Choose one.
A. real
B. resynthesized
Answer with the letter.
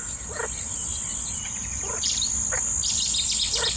A